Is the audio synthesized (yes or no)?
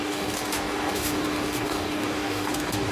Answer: yes